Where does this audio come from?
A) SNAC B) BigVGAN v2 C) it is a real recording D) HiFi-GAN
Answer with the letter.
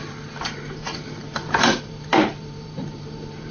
B